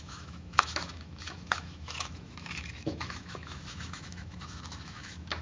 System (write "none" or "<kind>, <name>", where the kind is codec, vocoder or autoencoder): autoencoder, DAC-VAE